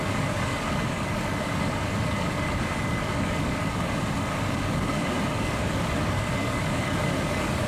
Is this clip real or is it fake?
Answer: fake